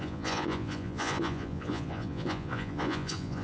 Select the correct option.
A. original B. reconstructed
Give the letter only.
B